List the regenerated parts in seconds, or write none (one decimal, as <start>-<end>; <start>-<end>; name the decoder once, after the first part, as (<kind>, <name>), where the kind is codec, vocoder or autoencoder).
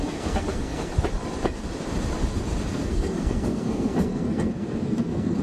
0.0-0.9 (codec, SNAC); 2.7-5.4